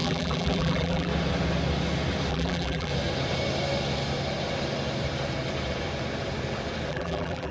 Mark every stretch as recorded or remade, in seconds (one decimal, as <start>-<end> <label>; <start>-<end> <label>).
0.0-1.1 remade; 1.1-2.3 recorded; 2.3-2.9 remade; 2.9-6.9 recorded; 6.9-7.5 remade